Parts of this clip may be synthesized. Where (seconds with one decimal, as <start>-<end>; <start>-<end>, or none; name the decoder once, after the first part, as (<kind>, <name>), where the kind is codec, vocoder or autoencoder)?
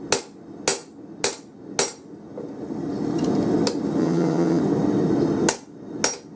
4.0-4.6 (vocoder, HiFi-GAN)